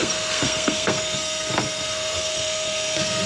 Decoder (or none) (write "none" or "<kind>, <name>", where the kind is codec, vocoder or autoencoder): codec, SNAC